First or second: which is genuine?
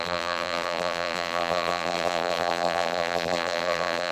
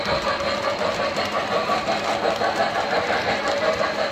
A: second